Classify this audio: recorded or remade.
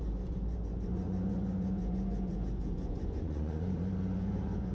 remade